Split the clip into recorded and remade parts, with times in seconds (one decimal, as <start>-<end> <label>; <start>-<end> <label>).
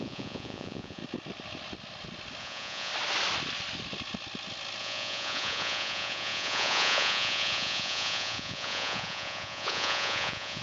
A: 0.0-1.0 remade; 1.0-2.4 recorded; 2.4-2.9 remade; 2.9-4.8 recorded; 4.8-10.6 remade